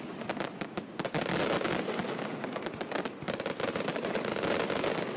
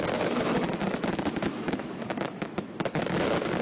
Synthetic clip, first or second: second